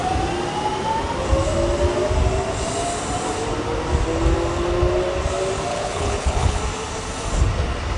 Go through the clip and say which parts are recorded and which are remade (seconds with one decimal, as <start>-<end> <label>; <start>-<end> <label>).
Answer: 0.0-5.7 recorded; 5.7-6.6 remade; 6.6-8.0 recorded